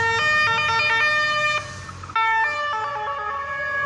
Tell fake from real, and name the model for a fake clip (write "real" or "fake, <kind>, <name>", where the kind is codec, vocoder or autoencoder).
real